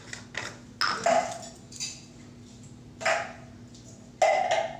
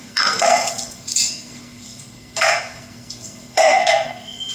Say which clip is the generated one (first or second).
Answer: second